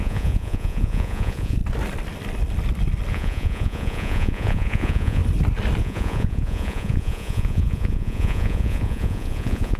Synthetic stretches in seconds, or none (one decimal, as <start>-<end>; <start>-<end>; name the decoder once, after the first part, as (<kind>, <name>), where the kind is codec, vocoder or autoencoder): 0.0-1.6 (vocoder, Vocos); 3.1-5.2; 5.8-9.8